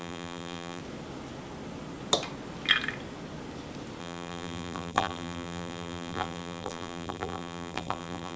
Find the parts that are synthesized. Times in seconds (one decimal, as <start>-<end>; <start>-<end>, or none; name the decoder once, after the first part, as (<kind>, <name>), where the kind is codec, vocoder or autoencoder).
0.0-0.8 (vocoder, BigVGAN v2); 4.0-8.4